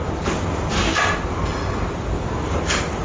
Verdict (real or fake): real